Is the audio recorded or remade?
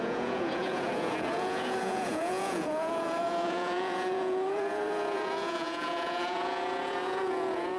remade